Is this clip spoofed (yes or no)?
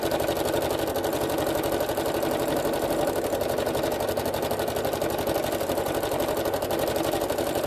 no